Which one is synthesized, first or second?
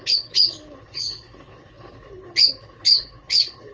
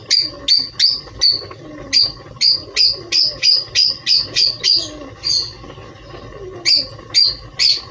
first